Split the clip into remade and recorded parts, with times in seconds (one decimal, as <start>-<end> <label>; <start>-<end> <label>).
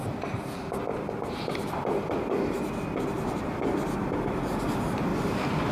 0.0-0.9 remade; 0.9-4.1 recorded; 4.1-5.1 remade; 5.1-5.7 recorded